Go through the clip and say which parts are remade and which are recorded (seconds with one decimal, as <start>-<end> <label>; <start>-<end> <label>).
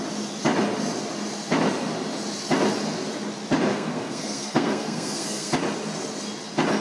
0.0-3.7 recorded; 3.7-5.5 remade; 5.5-6.8 recorded